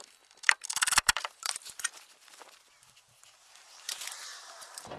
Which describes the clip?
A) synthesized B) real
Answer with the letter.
A